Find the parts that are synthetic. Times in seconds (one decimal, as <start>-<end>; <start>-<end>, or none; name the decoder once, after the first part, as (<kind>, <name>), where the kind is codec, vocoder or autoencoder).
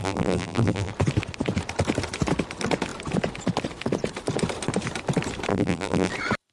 0.0-0.9 (vocoder, BigVGAN v2); 5.5-6.1